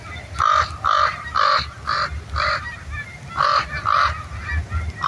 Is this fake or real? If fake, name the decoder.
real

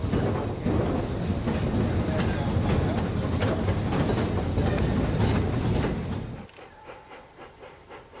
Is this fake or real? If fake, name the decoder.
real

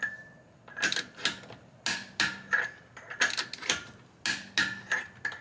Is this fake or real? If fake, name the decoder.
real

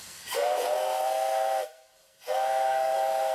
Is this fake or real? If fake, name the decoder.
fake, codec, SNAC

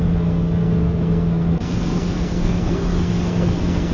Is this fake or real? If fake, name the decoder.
fake, codec, SNAC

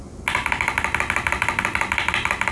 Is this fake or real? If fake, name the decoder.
real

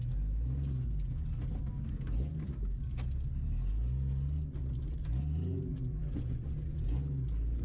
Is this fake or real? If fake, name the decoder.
real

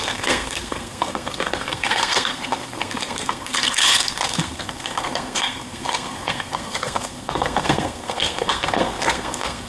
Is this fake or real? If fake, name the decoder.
fake, codec, SNAC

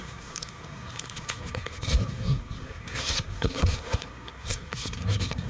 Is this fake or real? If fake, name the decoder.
fake, codec, SNAC